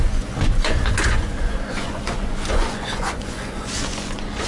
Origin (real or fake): fake